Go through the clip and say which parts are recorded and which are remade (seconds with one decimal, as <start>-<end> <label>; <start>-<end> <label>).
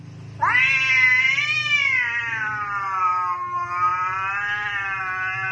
0.0-5.5 recorded